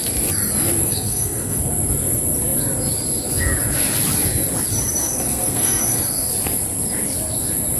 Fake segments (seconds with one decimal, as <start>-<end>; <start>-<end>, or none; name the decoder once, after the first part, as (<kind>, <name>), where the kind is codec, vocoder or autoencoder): 0.8-1.7 (codec, SNAC); 5.0-6.3